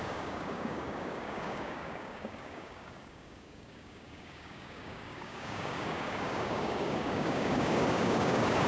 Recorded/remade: remade